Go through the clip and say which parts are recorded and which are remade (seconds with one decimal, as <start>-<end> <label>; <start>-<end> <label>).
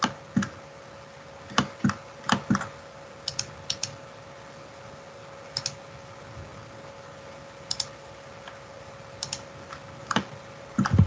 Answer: 0.0-11.1 recorded